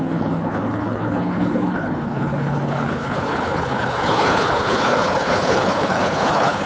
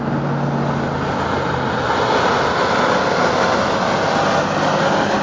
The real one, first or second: second